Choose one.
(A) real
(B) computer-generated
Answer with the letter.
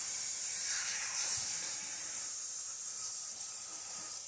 B